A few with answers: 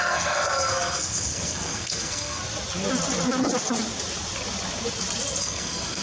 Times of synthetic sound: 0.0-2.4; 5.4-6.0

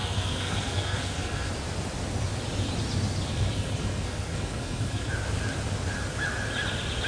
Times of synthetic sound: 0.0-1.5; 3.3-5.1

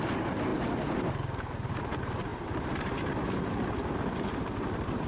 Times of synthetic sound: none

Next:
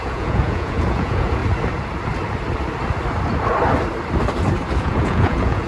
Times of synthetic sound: 0.0-1.4; 4.8-5.7

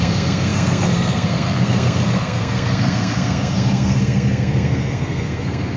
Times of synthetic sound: 0.0-5.8

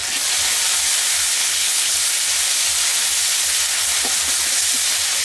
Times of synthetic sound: 1.3-2.0

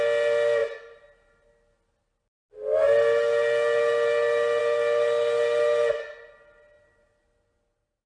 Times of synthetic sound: none

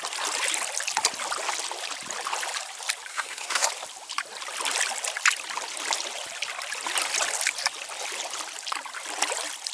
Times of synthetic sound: 3.1-3.7